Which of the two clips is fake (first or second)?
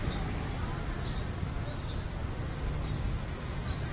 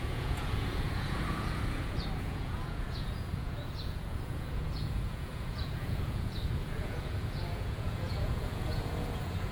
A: second